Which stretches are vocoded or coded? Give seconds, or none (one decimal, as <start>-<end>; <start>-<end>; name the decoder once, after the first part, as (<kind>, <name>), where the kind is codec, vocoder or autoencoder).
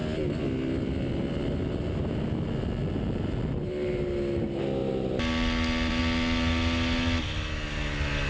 none